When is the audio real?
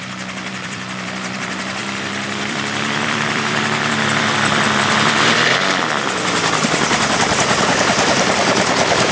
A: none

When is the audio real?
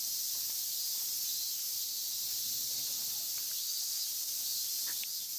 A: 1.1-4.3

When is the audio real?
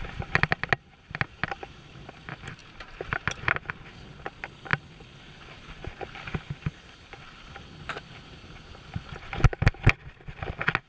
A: 0.0-1.4; 2.1-10.9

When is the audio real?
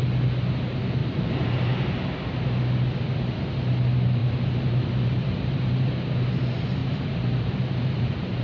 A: 0.0-1.0; 1.7-4.2; 5.9-6.8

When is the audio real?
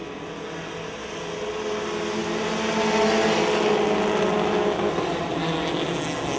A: 0.0-6.4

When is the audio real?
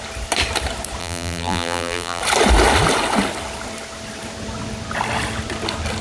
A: 0.0-1.0; 2.2-6.0